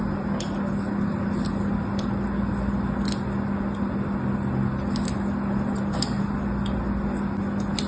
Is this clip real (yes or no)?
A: yes